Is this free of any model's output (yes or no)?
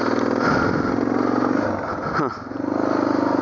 yes